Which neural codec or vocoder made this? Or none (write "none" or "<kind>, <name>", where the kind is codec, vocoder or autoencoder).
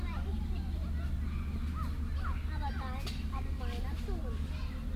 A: none